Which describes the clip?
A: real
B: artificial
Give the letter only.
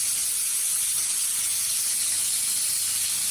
A